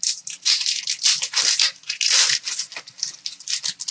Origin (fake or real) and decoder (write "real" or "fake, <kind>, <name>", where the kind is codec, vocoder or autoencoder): real